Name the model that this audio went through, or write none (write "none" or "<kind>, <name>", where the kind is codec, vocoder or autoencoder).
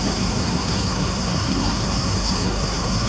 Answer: codec, SNAC